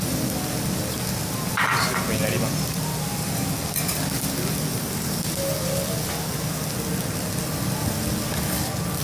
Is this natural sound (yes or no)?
yes